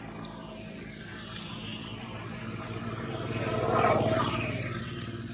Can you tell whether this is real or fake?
real